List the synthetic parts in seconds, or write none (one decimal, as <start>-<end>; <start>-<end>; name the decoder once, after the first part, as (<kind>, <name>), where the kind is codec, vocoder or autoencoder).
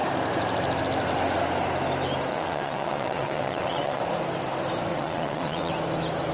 2.3-4.0 (vocoder, WaveNeXt); 4.9-5.7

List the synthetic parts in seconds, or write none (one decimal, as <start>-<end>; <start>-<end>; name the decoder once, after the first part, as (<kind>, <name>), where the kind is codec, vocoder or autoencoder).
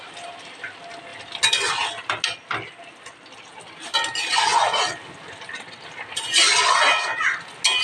none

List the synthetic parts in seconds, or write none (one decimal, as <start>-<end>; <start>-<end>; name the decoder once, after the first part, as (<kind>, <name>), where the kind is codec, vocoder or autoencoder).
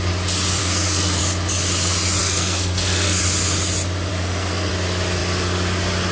0.6-1.2 (codec, SNAC); 2.2-3.2; 4.1-4.7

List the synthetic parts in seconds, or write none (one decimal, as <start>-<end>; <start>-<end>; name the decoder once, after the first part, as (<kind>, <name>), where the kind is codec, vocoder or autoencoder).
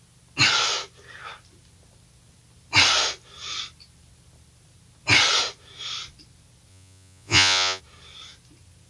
6.7-7.8 (vocoder, Vocos)